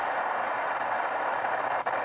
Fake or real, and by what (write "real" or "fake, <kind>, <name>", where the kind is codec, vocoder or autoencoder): fake, vocoder, BigVGAN v2